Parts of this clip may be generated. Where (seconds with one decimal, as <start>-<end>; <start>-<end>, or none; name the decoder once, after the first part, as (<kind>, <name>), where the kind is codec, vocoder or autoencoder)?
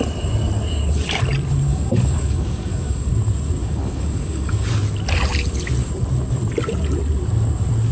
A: 1.7-3.1 (codec, DAC); 3.6-4.7